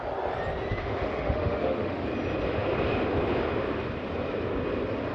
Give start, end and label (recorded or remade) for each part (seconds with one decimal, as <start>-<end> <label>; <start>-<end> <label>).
0.0-0.8 recorded; 0.8-2.0 remade; 2.0-5.1 recorded